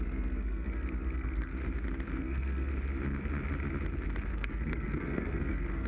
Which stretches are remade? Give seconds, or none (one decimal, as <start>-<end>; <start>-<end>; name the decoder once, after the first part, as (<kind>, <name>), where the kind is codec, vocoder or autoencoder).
0.0-1.5 (codec, SNAC); 2.2-2.7; 4.3-5.9